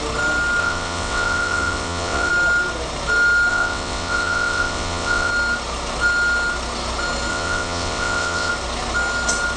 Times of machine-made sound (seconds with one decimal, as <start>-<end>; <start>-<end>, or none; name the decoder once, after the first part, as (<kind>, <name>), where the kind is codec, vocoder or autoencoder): 0.6-2.3 (vocoder, WaveNeXt); 3.5-5.3; 7.3-8.5

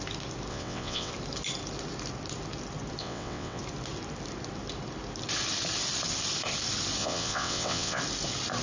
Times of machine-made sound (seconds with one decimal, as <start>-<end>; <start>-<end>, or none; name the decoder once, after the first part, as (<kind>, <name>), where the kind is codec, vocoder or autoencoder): 0.5-1.1 (vocoder, WaveNeXt); 3.0-3.6; 7.0-8.0